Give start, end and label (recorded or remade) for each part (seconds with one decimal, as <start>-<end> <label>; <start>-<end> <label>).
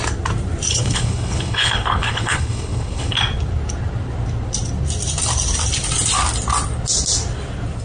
0.0-0.7 recorded; 0.7-3.2 remade; 3.2-7.8 recorded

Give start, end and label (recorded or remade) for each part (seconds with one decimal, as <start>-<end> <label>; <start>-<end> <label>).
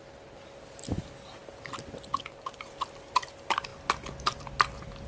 0.0-5.1 recorded